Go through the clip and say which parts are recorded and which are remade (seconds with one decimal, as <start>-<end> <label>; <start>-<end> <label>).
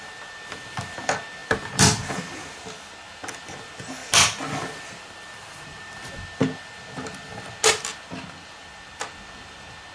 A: 0.0-9.9 recorded